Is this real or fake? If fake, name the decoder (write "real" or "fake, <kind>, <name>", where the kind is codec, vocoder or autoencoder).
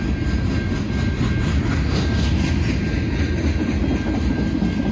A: real